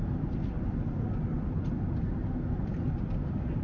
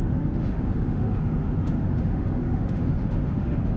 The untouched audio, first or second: first